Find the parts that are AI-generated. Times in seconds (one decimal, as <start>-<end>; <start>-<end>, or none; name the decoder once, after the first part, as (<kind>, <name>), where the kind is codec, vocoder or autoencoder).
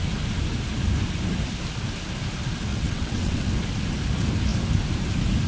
2.7-3.5 (vocoder, WaveNeXt)